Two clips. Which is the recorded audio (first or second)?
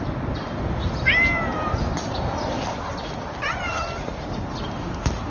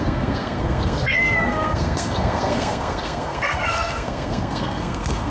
first